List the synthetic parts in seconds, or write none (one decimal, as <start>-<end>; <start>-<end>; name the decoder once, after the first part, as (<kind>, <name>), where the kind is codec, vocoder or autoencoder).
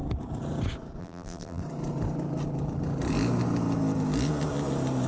1.0-1.6 (vocoder, BigVGAN v2)